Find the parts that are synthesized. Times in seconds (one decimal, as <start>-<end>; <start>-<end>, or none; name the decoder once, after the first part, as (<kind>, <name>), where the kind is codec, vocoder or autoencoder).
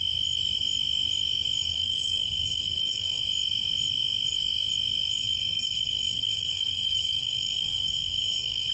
1.7-3.2 (codec, SNAC); 5.2-8.7